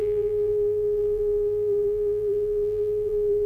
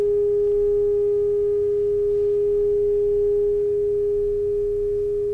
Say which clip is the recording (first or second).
second